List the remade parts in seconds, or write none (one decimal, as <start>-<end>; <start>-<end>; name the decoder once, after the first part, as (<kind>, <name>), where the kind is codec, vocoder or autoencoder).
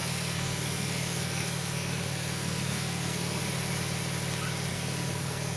0.0-3.4 (codec, SNAC); 4.7-5.6